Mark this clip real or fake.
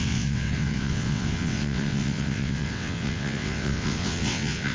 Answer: fake